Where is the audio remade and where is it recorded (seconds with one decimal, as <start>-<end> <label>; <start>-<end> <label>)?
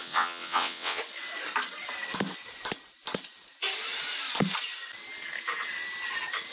0.0-1.0 remade; 1.0-6.5 recorded